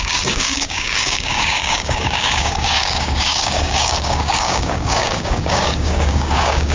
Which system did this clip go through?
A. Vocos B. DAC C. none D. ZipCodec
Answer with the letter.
B